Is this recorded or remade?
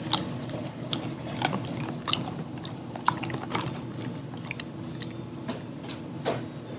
recorded